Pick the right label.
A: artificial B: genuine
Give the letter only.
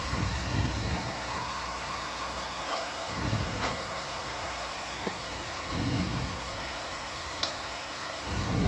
A